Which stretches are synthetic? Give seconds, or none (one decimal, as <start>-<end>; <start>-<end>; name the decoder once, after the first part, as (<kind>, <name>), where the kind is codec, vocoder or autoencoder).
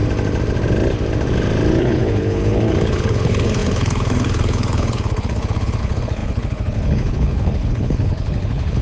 1.8-8.8 (codec, HILCodec)